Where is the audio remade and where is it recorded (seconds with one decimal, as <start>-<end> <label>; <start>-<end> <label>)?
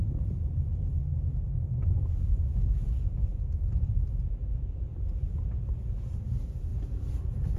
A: 0.0-7.6 recorded